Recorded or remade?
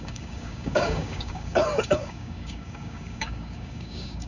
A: remade